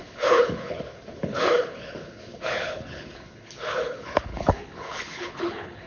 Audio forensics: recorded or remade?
remade